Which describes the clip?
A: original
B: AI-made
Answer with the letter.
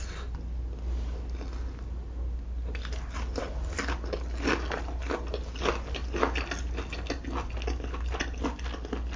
A